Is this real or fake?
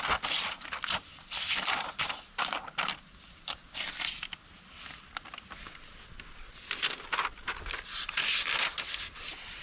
real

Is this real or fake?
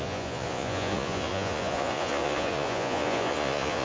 fake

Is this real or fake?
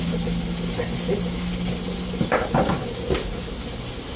real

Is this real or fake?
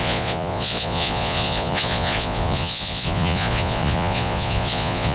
fake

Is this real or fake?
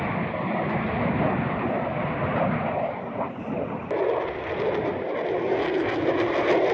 real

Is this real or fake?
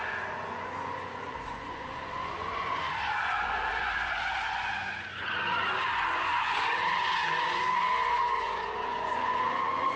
fake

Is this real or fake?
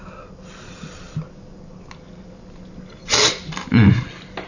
real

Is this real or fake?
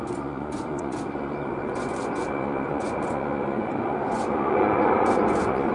fake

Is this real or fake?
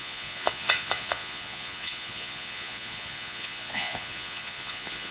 fake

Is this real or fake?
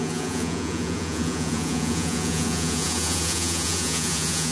fake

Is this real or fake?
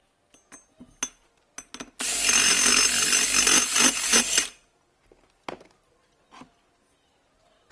real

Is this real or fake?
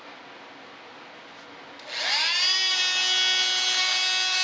real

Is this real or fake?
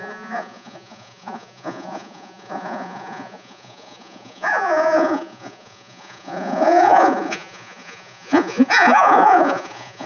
fake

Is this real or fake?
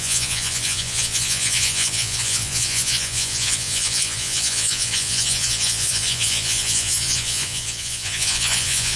fake